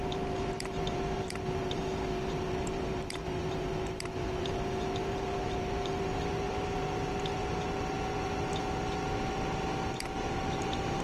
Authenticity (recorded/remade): remade